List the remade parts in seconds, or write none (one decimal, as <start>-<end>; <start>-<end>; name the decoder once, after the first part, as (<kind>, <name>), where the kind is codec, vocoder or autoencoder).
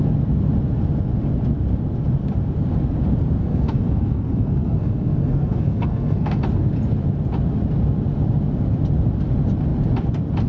3.4-6.4 (codec, SNAC)